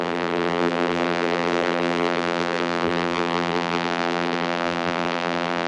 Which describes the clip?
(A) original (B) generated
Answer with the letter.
B